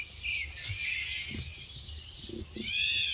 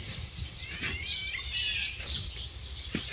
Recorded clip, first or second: first